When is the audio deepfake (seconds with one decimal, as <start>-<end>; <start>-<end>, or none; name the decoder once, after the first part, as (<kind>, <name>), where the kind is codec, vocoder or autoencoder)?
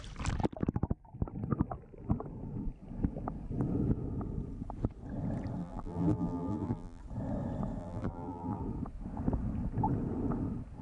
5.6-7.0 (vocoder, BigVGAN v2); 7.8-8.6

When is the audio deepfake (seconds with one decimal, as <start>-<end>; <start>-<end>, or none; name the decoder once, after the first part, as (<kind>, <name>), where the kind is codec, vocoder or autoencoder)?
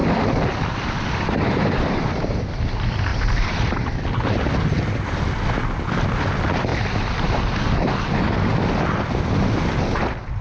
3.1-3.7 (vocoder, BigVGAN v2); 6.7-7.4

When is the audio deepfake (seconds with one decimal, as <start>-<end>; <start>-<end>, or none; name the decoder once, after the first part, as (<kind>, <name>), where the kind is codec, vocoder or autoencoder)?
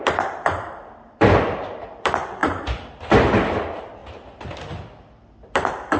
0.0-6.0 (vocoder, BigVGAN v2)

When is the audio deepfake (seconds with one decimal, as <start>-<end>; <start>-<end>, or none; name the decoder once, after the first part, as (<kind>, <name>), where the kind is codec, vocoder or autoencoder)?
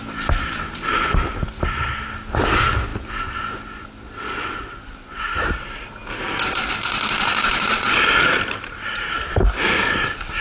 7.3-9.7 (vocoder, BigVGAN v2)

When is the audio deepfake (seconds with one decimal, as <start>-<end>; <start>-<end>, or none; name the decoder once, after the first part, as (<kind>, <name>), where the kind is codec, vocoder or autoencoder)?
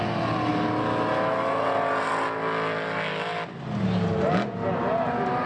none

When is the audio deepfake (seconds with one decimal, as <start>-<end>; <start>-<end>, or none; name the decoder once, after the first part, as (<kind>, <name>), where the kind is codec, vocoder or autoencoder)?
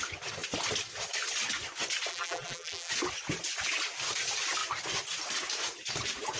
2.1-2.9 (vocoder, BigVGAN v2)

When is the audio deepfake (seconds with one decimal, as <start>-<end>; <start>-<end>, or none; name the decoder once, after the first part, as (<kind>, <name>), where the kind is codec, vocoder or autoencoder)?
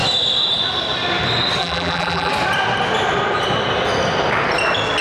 1.6-2.3 (vocoder, BigVGAN v2)